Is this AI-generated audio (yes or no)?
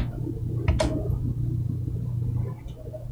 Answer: no